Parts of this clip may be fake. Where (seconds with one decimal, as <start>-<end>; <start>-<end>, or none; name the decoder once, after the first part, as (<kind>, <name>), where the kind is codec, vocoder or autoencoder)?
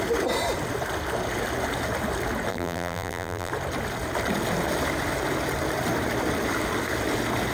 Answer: 2.5-3.5 (vocoder, BigVGAN v2)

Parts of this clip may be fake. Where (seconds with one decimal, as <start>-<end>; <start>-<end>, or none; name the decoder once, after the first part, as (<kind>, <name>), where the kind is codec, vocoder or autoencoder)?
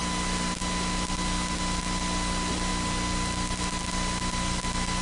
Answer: none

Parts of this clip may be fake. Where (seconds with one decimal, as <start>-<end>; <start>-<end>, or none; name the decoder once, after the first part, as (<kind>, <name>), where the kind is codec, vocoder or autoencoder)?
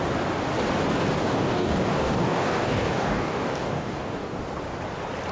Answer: 1.2-4.4 (codec, DAC)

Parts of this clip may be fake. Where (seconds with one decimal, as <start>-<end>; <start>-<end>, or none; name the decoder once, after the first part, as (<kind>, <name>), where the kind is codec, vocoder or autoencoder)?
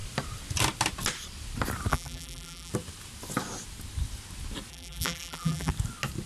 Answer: 1.9-2.7 (vocoder, BigVGAN v2); 4.7-5.7